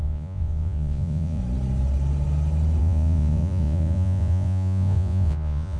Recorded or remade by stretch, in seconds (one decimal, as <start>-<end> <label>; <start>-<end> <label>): 0.0-1.4 remade; 1.4-2.8 recorded; 2.8-5.8 remade